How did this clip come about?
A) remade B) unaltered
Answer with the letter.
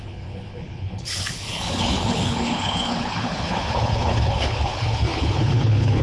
A